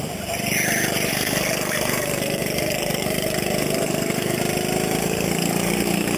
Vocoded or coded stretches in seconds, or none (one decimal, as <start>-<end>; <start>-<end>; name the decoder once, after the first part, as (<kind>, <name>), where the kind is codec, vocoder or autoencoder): 1.1-4.4 (codec, SNAC); 5.0-6.2